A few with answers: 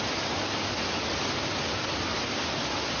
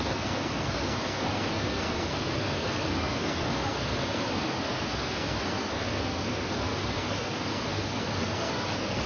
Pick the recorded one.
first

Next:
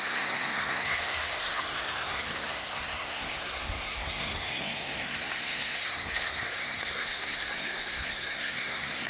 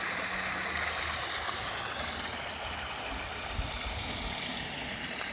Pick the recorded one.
second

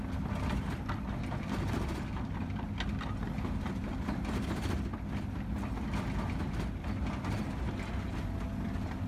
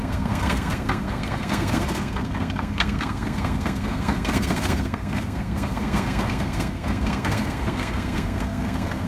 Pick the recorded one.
first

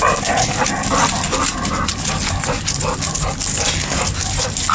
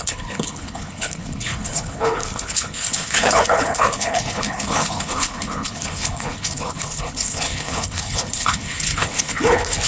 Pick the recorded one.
first